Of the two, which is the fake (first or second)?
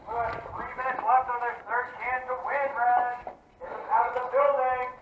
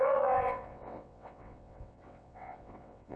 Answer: second